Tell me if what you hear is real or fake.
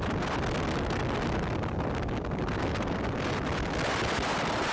real